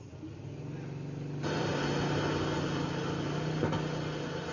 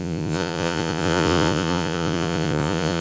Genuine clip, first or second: first